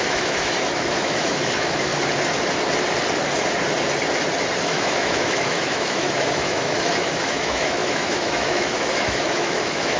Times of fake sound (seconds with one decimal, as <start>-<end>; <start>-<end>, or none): 0.0-1.9; 4.6-10.0